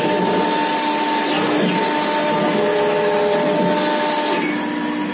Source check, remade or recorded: recorded